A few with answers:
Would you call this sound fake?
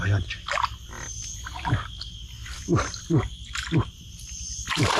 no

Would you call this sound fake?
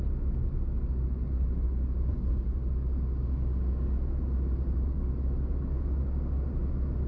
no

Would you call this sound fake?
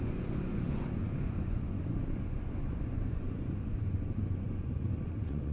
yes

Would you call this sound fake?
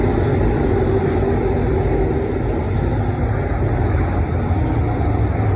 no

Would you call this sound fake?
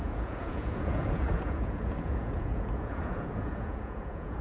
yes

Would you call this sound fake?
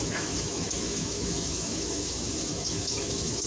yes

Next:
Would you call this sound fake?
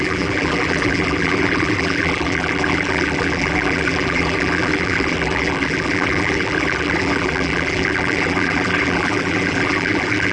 yes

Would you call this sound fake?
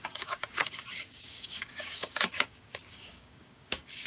yes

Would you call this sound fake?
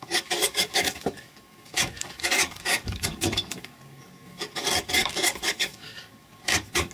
yes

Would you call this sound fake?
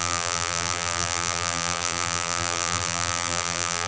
yes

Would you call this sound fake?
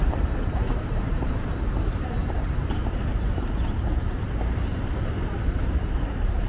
yes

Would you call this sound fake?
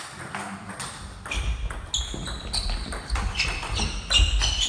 no